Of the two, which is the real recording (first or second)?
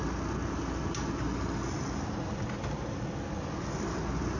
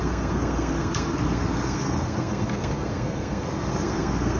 first